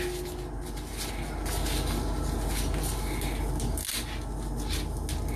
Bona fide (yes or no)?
yes